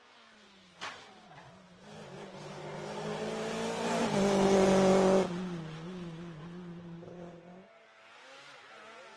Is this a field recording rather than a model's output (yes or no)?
yes